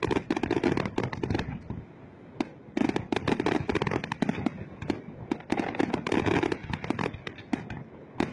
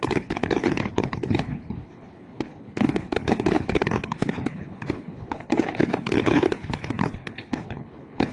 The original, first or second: first